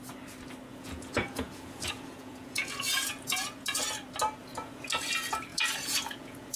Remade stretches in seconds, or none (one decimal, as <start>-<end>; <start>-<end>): 0.7-3.8; 4.4-4.9; 5.5-6.6